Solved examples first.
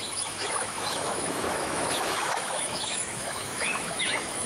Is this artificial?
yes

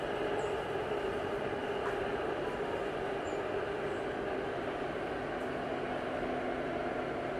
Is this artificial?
no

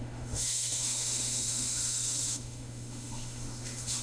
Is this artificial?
yes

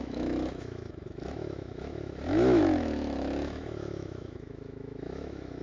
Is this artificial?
yes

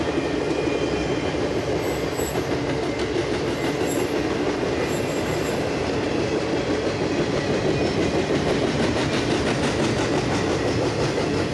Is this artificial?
no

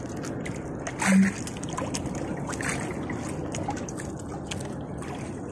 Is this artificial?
no